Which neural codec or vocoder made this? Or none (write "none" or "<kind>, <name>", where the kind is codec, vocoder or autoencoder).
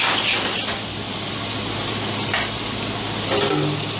none